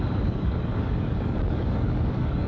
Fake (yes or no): yes